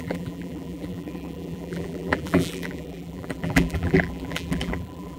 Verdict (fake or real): fake